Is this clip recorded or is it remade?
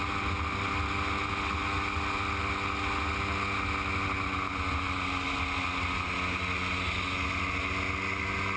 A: recorded